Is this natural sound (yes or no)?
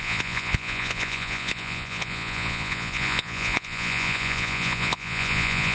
no